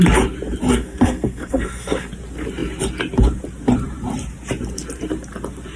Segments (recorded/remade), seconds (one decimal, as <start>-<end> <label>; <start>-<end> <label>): 0.0-0.7 recorded; 0.7-2.1 remade; 2.1-5.8 recorded